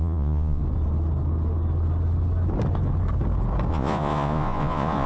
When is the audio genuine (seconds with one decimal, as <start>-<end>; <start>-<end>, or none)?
0.6-3.7